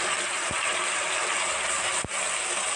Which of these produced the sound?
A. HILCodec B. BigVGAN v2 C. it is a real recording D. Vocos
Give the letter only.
B